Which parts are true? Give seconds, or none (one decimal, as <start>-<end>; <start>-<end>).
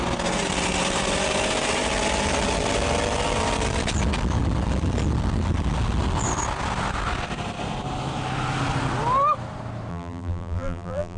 0.0-9.9